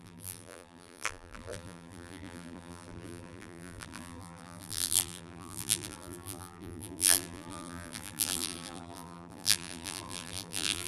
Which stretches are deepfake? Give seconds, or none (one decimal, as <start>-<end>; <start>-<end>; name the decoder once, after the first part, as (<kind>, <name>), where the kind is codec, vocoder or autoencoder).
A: 0.0-10.9 (vocoder, BigVGAN v2)